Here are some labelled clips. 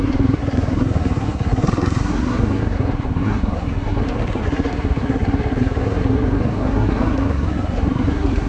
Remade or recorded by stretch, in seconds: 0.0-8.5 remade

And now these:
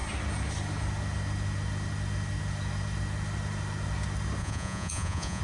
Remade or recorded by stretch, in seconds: 0.0-4.4 recorded; 4.4-5.4 remade

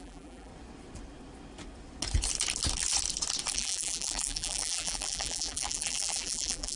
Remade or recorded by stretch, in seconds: 0.0-0.5 remade; 0.5-3.5 recorded; 3.5-6.8 remade

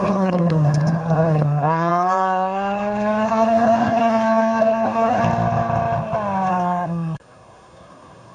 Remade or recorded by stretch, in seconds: 0.0-5.2 remade; 5.2-6.5 recorded; 6.5-8.3 remade

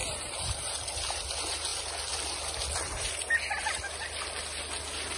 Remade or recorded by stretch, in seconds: 0.0-0.6 remade; 0.6-5.2 recorded